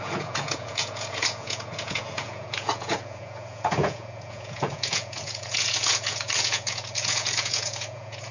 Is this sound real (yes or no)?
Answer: no